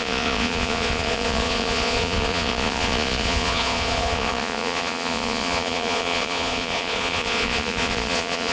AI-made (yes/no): yes